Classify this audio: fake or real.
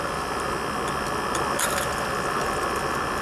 real